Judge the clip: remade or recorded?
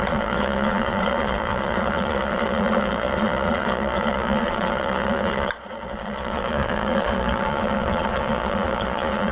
remade